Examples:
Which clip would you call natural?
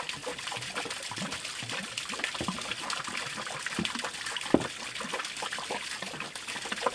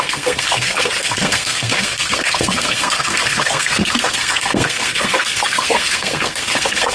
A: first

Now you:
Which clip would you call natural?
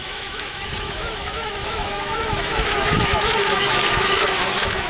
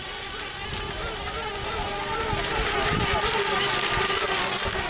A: second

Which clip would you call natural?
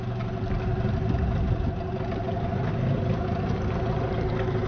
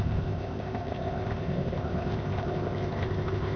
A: first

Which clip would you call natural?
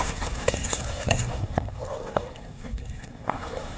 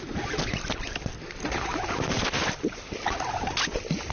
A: second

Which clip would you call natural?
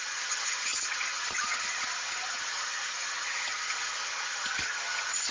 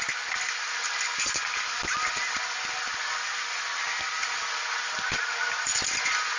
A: second